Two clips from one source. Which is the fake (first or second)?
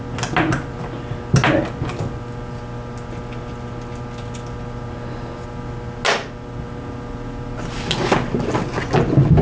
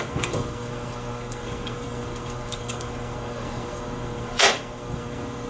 second